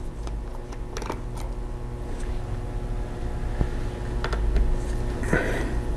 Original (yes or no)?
yes